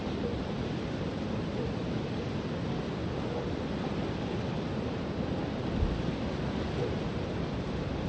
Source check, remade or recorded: recorded